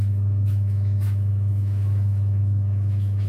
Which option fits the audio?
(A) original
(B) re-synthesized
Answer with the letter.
B